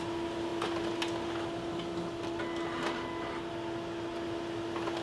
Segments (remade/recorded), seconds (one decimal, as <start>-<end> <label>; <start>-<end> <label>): 0.0-5.0 recorded